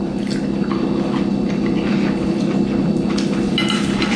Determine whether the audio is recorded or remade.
recorded